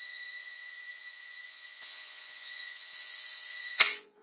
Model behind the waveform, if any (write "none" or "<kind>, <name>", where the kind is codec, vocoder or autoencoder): vocoder, Vocos